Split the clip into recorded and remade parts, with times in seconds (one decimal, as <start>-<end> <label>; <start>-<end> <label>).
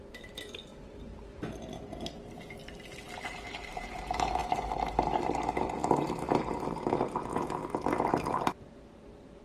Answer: 0.0-2.6 remade; 2.6-3.2 recorded; 3.2-7.6 remade; 7.6-8.1 recorded; 8.1-9.4 remade